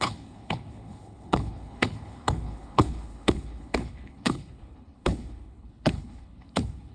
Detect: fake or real fake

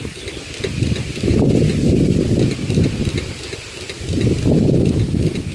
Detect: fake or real real